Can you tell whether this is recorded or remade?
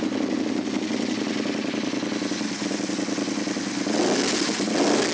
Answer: recorded